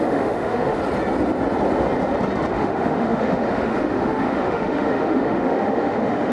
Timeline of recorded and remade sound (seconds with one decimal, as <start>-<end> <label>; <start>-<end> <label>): 0.0-0.8 remade; 0.8-2.5 recorded; 2.5-6.3 remade